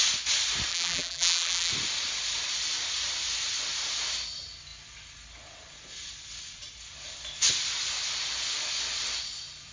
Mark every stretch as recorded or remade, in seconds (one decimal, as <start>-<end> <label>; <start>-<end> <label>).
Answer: 0.0-0.7 recorded; 0.7-1.7 remade; 1.7-9.7 recorded

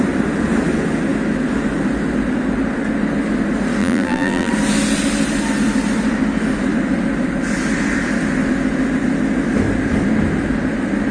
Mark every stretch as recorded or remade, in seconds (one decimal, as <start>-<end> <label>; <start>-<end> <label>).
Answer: 0.0-3.8 recorded; 3.8-4.5 remade; 4.5-11.1 recorded

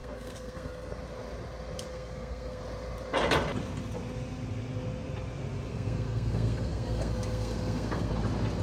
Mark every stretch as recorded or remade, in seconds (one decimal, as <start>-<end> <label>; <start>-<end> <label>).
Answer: 0.0-1.0 remade; 1.0-1.9 recorded; 1.9-2.6 remade; 2.6-5.7 recorded; 5.7-8.1 remade; 8.1-8.6 recorded

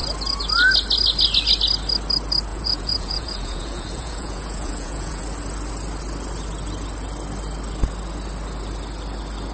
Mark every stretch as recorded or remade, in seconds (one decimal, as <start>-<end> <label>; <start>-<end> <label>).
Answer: 0.0-2.5 recorded; 2.5-5.2 remade; 5.2-9.5 recorded

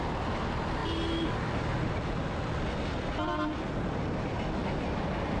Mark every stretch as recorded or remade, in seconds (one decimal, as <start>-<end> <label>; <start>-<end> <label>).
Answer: 0.0-5.4 recorded

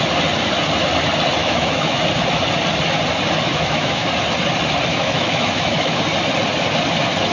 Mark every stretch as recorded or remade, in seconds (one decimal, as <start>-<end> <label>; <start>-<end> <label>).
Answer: 0.0-1.4 recorded; 1.4-2.0 remade; 2.0-3.5 recorded; 3.5-4.1 remade; 4.1-4.9 recorded; 4.9-6.0 remade; 6.0-7.3 recorded

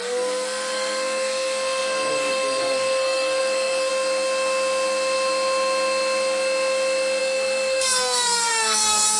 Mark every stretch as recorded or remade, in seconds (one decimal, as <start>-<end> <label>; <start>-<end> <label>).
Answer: 0.0-3.9 remade; 3.9-7.2 recorded; 7.2-9.2 remade

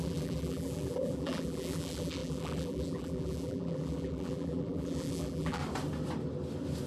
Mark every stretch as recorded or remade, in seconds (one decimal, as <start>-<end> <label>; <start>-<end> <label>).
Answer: 0.0-5.6 remade; 5.6-6.9 recorded